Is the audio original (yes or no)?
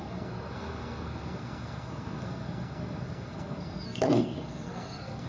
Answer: no